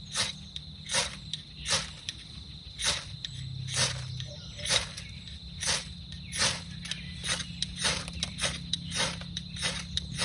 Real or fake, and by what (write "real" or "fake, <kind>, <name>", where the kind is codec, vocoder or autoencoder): real